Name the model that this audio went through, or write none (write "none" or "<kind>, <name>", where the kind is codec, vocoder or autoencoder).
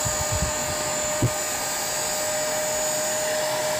none